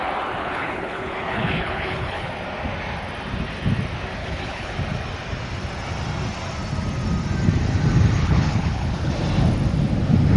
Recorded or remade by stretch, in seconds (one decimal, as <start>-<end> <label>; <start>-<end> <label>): 0.0-0.4 recorded; 0.4-2.3 remade; 2.3-4.2 recorded; 4.2-4.7 remade; 4.7-8.2 recorded; 8.2-9.1 remade; 9.1-10.4 recorded